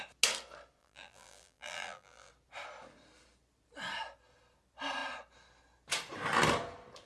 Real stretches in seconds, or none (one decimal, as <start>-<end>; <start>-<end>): 0.0-0.8; 2.3-7.1